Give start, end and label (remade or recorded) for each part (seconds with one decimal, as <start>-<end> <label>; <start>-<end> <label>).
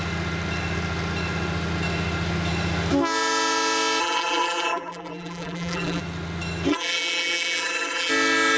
0.0-4.0 recorded; 4.0-6.0 remade; 6.0-6.7 recorded; 6.7-8.1 remade; 8.1-8.6 recorded